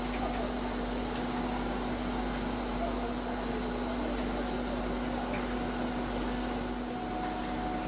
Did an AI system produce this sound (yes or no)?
no